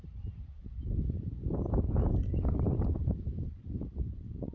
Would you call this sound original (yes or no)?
no